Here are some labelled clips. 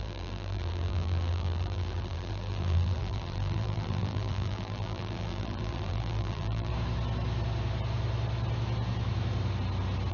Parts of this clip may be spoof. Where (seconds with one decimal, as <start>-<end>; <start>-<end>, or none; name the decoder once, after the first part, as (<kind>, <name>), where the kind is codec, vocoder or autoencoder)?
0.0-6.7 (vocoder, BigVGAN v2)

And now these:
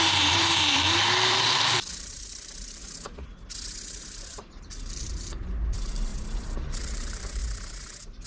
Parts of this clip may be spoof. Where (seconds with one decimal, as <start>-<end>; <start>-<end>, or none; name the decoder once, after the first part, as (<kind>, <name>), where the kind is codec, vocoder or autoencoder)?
0.0-2.8 (vocoder, BigVGAN v2); 4.0-6.1; 6.7-7.4

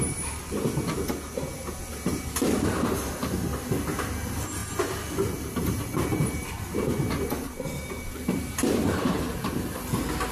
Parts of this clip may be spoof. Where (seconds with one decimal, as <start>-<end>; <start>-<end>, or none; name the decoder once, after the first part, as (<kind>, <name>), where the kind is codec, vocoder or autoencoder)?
6.1-9.3 (vocoder, BigVGAN v2)